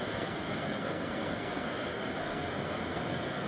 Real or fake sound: fake